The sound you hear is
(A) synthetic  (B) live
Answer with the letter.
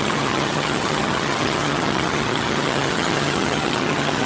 A